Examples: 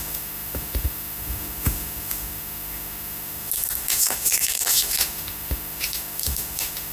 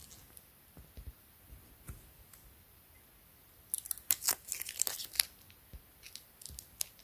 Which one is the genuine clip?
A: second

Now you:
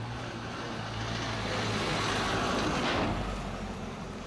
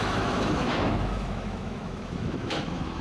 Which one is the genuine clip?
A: first